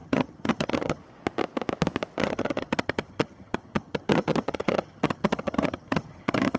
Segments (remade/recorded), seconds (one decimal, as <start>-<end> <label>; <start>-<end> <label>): 0.0-1.0 remade; 1.0-2.2 recorded; 2.2-6.6 remade